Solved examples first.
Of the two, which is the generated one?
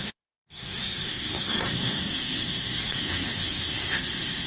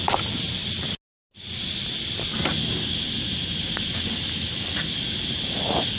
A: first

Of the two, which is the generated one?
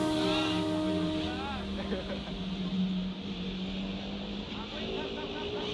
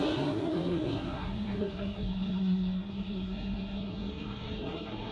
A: second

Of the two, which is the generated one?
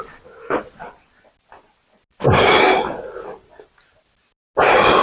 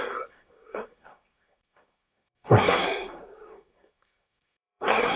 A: second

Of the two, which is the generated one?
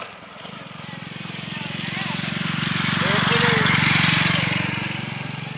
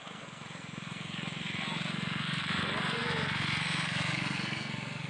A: second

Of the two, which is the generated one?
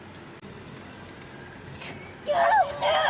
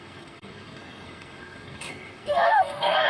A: second